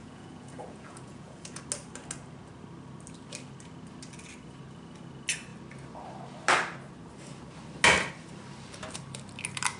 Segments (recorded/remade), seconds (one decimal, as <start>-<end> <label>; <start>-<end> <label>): 0.0-1.6 remade; 1.6-9.8 recorded